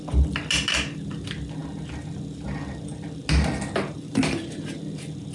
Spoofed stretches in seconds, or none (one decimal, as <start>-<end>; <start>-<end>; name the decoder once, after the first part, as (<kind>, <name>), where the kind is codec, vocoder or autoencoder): none